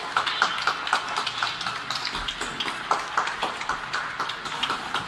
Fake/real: real